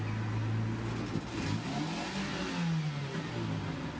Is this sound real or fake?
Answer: real